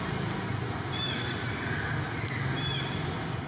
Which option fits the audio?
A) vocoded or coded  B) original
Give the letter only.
B